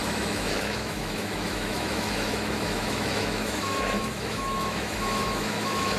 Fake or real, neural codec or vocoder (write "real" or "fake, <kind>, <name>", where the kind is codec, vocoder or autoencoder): fake, autoencoder, DAC-VAE